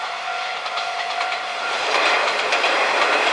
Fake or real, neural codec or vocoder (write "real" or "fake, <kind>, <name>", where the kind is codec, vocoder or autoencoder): fake, vocoder, BigVGAN v2